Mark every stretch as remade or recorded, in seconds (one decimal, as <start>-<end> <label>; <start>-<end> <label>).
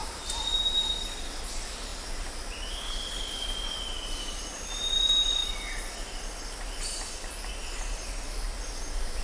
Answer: 0.0-1.1 remade; 1.1-5.4 recorded; 5.4-7.5 remade; 7.5-9.2 recorded